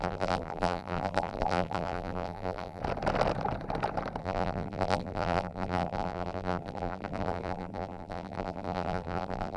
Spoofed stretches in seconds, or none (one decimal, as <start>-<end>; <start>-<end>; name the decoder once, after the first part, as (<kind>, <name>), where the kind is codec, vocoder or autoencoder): 0.0-2.8 (vocoder, BigVGAN v2); 4.2-9.6